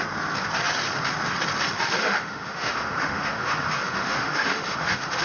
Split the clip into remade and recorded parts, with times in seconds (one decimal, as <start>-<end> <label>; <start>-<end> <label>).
0.0-2.0 recorded; 2.0-5.2 remade